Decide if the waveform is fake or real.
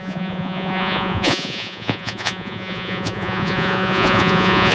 fake